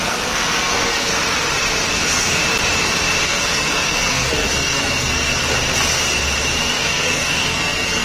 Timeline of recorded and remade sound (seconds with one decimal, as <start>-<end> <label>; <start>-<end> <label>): 0.0-1.1 remade; 1.1-1.9 recorded; 1.9-2.4 remade; 2.4-3.2 recorded; 3.2-5.4 remade; 5.4-6.8 recorded; 6.8-8.0 remade